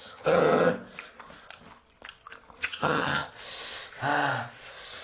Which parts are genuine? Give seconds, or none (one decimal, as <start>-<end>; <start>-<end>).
0.7-2.6; 3.3-5.0